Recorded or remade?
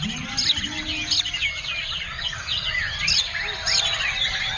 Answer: recorded